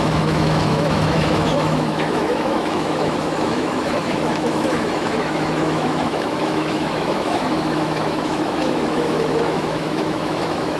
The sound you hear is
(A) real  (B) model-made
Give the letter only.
B